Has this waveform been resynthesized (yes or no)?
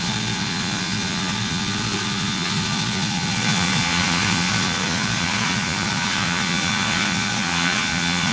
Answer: yes